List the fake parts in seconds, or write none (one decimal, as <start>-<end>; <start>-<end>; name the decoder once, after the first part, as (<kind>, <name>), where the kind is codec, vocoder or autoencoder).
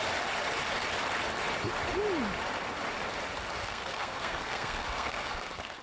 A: 3.6-5.8 (codec, SNAC)